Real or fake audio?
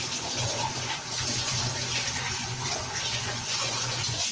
fake